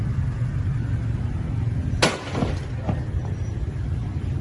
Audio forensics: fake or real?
real